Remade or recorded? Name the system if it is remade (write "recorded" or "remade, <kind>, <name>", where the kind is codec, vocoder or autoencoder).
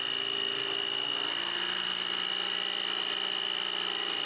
recorded